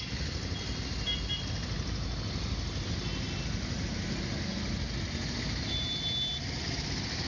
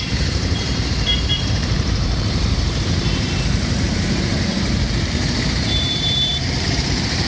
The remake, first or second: second